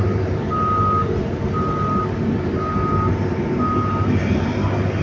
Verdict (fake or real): real